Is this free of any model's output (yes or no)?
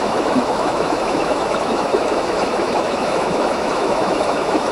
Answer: no